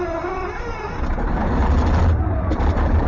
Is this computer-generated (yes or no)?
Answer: no